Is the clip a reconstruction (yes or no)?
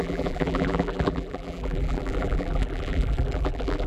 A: yes